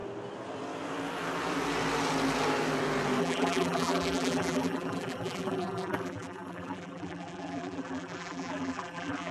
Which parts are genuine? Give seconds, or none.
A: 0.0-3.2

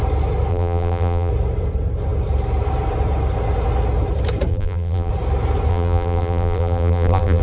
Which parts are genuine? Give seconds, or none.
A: 0.0-0.5; 1.3-4.5; 5.1-5.7